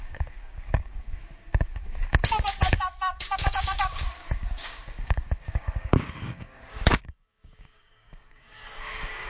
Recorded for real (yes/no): no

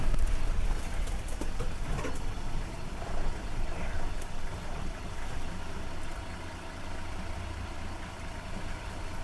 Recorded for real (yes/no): yes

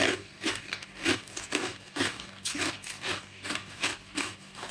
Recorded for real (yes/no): no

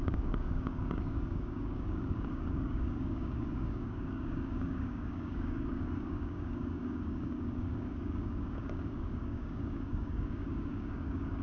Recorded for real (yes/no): no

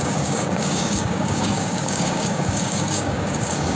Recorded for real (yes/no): no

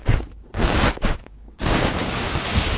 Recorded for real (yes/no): no